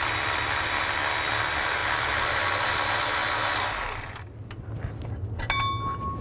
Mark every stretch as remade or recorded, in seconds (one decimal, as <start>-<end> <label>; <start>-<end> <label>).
0.0-6.2 recorded